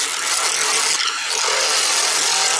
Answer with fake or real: real